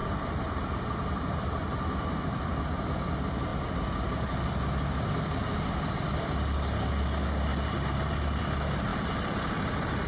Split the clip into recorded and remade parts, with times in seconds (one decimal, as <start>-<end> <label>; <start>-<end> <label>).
0.0-10.1 recorded